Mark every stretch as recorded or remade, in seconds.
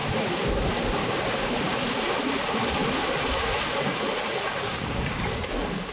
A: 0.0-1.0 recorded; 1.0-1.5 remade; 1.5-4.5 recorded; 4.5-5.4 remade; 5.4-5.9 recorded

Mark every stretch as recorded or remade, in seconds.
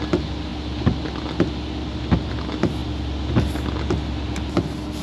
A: 0.0-5.0 recorded